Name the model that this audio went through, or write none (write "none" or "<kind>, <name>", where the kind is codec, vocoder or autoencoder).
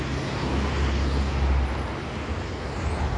none